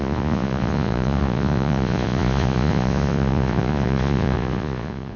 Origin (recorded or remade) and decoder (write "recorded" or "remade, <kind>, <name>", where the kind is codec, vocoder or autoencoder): remade, vocoder, Vocos